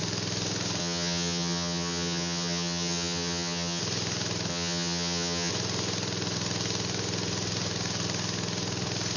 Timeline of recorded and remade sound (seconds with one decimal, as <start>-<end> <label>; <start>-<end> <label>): 0.0-0.8 recorded; 0.8-3.8 remade; 3.8-4.5 recorded; 4.5-5.5 remade; 5.5-9.2 recorded